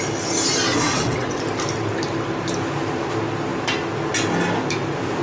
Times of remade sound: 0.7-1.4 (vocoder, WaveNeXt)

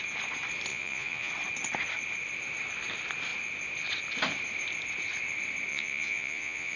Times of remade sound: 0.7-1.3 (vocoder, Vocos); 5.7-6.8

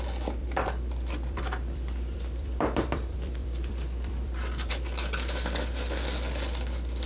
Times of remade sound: 0.4-4.7 (vocoder, BigVGAN v2)

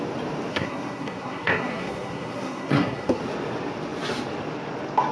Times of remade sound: 0.5-3.2 (codec, SNAC)

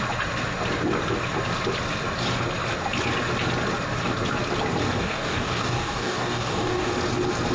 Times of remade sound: 4.8-6.9 (codec, DAC)

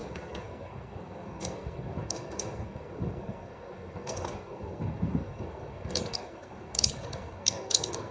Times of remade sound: 0.0-8.1 (codec, SNAC)